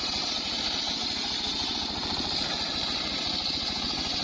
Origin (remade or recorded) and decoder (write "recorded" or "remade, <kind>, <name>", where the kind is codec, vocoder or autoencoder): recorded